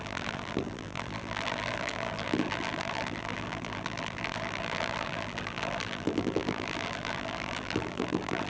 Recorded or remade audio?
remade